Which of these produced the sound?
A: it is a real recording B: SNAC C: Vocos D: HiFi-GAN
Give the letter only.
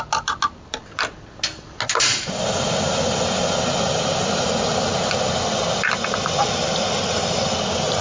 A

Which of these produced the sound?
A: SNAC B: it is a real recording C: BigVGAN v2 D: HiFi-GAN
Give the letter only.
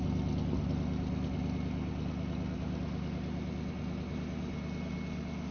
B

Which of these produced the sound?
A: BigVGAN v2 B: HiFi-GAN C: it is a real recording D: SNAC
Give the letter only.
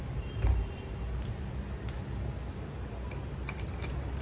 C